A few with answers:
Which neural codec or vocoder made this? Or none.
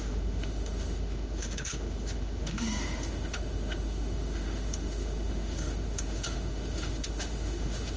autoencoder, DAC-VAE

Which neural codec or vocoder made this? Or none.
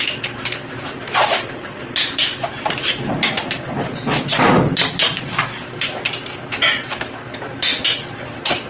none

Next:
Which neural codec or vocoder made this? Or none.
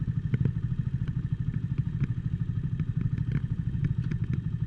none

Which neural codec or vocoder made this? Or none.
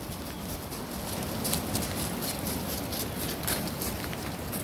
none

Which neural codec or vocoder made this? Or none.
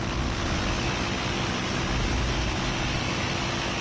none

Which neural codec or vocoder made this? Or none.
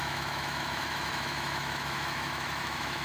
autoencoder, DAC-VAE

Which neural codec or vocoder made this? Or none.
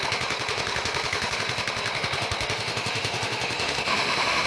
autoencoder, DAC-VAE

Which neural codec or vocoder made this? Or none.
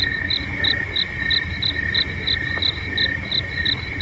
none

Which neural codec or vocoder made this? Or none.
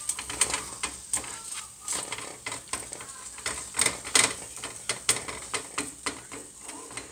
none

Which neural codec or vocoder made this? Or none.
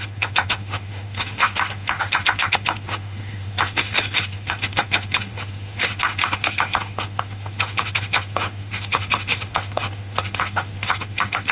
autoencoder, DAC-VAE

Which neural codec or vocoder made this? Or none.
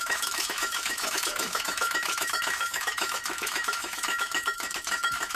autoencoder, DAC-VAE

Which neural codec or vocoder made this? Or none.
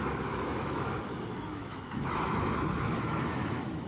autoencoder, DAC-VAE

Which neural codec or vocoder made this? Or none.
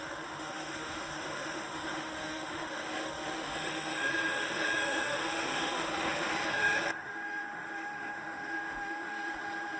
autoencoder, DAC-VAE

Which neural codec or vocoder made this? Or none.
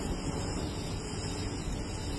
none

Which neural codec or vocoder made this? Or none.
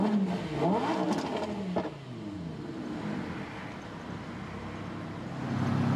none